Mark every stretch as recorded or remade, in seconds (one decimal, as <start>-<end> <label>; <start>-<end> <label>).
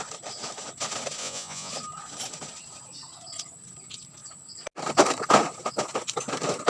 0.0-1.2 recorded; 1.2-1.7 remade; 1.7-6.7 recorded